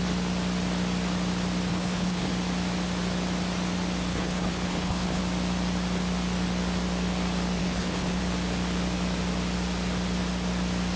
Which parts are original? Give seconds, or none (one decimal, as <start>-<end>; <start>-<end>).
0.0-1.7; 2.3-4.1; 5.2-7.6; 8.2-11.0